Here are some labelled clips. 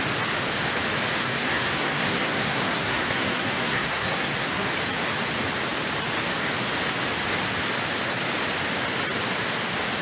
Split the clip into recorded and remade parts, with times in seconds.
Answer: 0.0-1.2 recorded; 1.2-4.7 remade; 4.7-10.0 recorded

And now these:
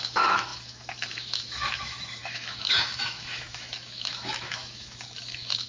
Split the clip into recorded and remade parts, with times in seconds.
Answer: 0.0-5.7 remade

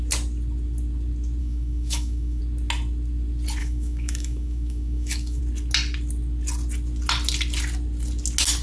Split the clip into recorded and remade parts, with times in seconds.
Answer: 0.0-1.4 recorded; 1.4-2.4 remade; 2.4-3.6 recorded; 3.6-5.4 remade; 5.4-8.6 recorded

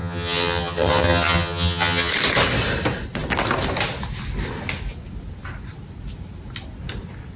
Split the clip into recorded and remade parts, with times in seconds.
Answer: 0.0-2.1 remade; 2.1-7.4 recorded

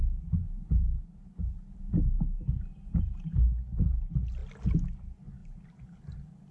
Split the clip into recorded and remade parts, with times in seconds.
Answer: 0.0-6.5 recorded

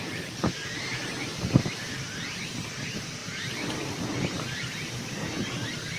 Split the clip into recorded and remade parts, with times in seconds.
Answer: 0.0-6.0 recorded